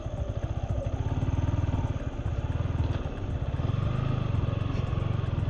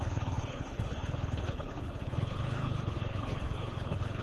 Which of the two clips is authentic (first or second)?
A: first